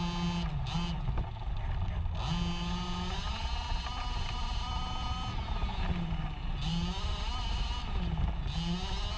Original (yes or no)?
yes